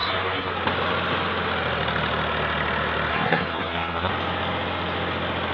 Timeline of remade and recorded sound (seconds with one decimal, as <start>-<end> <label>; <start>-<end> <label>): 0.0-0.5 remade; 0.5-3.1 recorded; 3.1-4.1 remade; 4.1-5.5 recorded